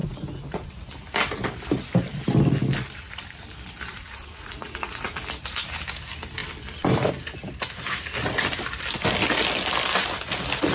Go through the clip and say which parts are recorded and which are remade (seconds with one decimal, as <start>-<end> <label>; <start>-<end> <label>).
0.0-0.7 remade; 0.7-3.9 recorded; 3.9-5.2 remade; 5.2-10.7 recorded